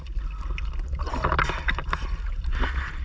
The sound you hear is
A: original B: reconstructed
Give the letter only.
A